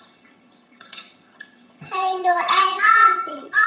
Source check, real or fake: fake